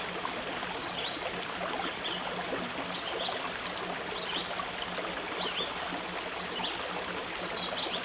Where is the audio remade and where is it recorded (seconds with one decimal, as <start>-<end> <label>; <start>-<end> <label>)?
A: 0.0-8.0 recorded